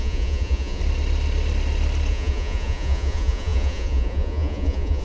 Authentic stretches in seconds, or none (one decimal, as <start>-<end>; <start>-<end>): 0.8-2.1